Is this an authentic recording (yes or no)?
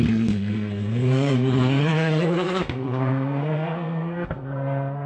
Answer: no